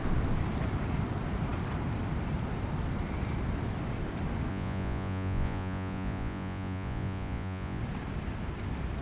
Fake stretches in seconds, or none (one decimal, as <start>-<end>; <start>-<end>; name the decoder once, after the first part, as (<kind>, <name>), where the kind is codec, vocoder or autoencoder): 4.5-7.8 (vocoder, Vocos)